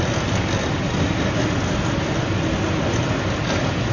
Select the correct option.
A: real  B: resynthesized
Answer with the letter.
A